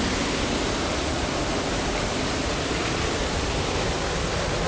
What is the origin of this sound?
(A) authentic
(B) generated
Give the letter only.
A